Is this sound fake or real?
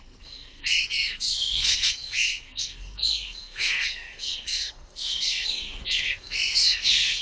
fake